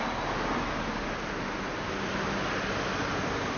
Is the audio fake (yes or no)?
no